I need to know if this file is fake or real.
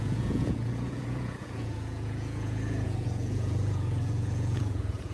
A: fake